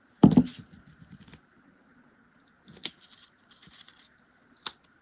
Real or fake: real